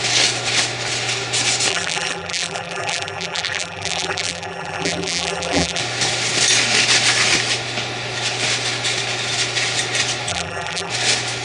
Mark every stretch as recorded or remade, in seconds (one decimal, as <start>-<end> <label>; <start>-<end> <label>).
0.0-1.7 recorded; 1.7-5.8 remade; 5.8-10.3 recorded; 10.3-10.9 remade; 10.9-11.4 recorded